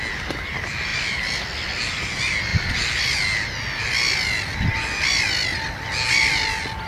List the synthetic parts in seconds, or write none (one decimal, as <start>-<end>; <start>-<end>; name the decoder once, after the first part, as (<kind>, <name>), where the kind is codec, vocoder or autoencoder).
none